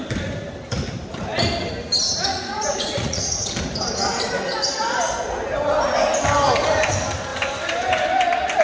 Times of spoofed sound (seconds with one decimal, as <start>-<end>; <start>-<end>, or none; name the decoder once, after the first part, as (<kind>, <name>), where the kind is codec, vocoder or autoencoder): 2.3-3.5 (vocoder, Vocos)